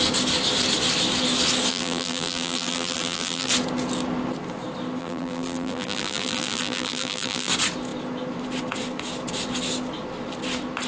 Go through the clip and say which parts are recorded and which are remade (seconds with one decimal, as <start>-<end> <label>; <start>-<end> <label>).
0.0-1.7 recorded; 1.7-3.5 remade; 3.5-5.0 recorded; 5.0-7.5 remade; 7.5-10.9 recorded

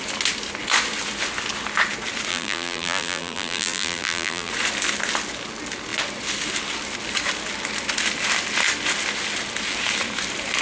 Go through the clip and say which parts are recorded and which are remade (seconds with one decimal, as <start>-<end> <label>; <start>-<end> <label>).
0.0-2.3 recorded; 2.3-4.5 remade; 4.5-10.6 recorded

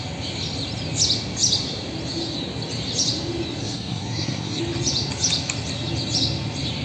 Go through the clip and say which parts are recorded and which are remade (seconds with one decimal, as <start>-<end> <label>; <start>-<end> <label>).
0.0-3.6 recorded; 3.6-4.6 remade; 4.6-6.8 recorded

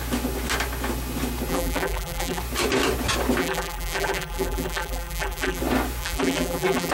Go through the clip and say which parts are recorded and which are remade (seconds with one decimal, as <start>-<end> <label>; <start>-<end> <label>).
0.0-1.5 recorded; 1.5-2.4 remade; 2.4-3.4 recorded; 3.4-5.6 remade; 5.6-6.0 recorded; 6.0-6.9 remade